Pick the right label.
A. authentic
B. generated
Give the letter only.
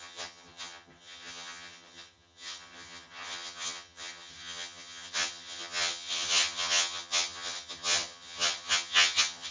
B